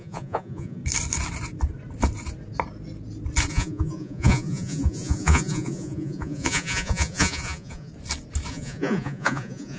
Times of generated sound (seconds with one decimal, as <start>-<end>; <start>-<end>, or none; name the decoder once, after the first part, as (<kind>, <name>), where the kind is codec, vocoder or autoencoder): 0.0-0.8 (vocoder, Vocos); 3.5-7.9; 8.5-9.8